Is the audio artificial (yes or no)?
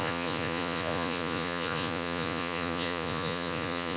yes